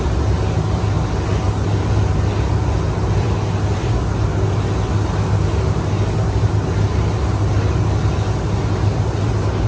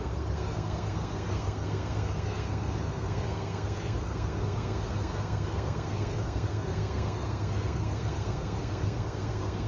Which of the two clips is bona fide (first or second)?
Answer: first